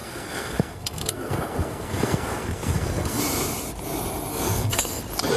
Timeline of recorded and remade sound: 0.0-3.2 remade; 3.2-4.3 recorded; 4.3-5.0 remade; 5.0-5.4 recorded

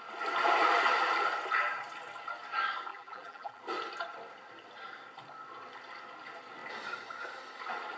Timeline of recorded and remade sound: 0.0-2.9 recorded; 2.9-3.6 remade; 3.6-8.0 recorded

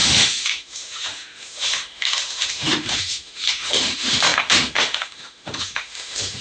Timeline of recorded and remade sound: 0.0-6.4 remade

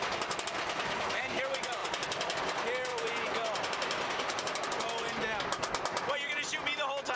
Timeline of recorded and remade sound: 0.0-7.2 recorded

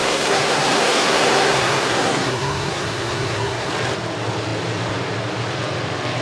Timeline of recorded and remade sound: 0.0-3.7 remade; 3.7-6.2 recorded

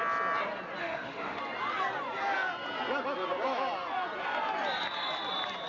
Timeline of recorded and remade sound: 0.0-0.8 recorded; 0.8-1.4 remade; 1.4-5.7 recorded

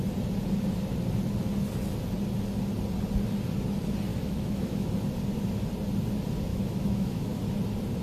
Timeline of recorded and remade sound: 0.0-4.1 recorded; 4.1-4.9 remade; 4.9-6.5 recorded; 6.5-7.4 remade; 7.4-8.0 recorded